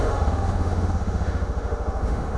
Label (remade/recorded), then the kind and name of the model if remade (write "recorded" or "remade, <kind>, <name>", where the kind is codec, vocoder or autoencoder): remade, autoencoder, DAC-VAE